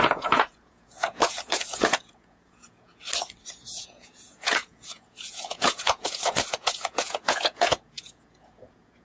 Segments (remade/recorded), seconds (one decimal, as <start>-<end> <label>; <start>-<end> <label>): 0.0-3.0 remade; 3.0-3.5 recorded; 3.5-9.0 remade